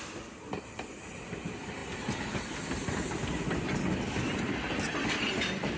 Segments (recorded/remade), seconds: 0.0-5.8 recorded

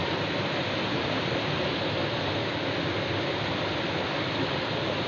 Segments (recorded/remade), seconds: 0.0-5.1 recorded

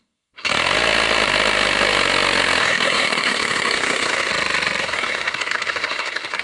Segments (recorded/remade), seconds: 0.0-0.5 remade; 0.5-2.6 recorded; 2.6-4.3 remade; 4.3-4.8 recorded; 4.8-6.4 remade

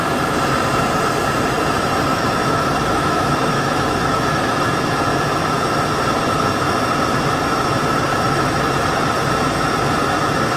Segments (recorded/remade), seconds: 0.0-2.1 recorded; 2.1-4.7 remade; 4.7-8.1 recorded; 8.1-8.7 remade; 8.7-10.6 recorded

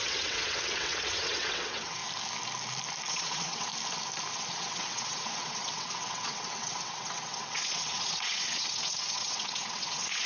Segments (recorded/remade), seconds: 0.0-2.0 remade; 2.0-3.1 recorded; 3.1-3.7 remade; 3.7-4.3 recorded; 4.3-10.3 remade

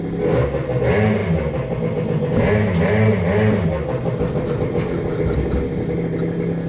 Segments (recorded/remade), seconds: 0.0-6.7 recorded

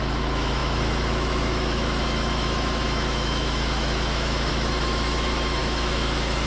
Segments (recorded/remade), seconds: 0.0-6.5 remade

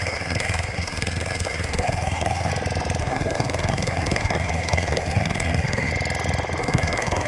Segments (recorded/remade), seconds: 0.0-2.5 remade; 2.5-3.0 recorded; 3.0-5.9 remade; 5.9-6.6 recorded; 6.6-7.3 remade